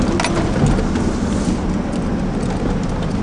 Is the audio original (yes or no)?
yes